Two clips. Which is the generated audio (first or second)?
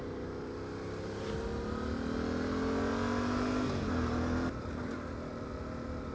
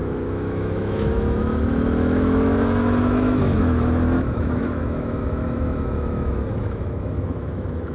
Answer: second